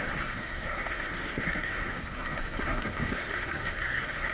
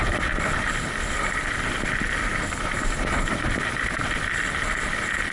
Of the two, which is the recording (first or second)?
second